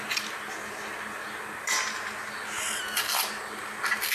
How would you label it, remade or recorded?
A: recorded